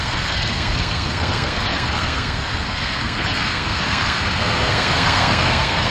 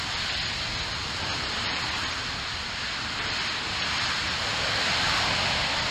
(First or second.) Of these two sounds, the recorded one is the second